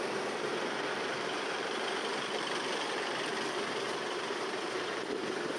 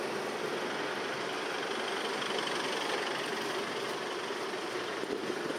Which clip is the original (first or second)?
second